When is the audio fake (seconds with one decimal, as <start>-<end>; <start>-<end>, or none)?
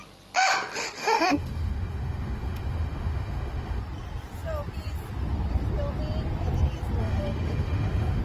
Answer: 1.0-3.8; 7.0-8.2